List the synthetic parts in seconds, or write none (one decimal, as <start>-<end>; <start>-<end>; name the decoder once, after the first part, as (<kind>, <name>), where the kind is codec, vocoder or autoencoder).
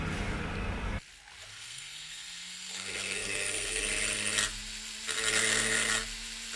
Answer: 1.5-3.8 (codec, SNAC); 5.3-5.9